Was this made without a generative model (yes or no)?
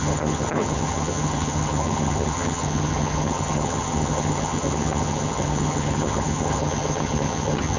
no